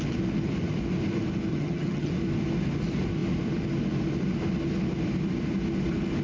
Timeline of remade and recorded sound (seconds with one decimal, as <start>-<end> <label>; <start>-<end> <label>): 0.0-1.5 recorded; 1.5-2.1 remade; 2.1-6.2 recorded